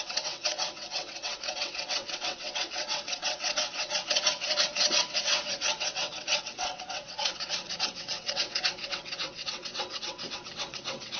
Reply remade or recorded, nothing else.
remade